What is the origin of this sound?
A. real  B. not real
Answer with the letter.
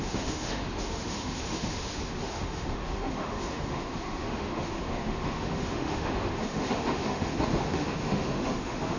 B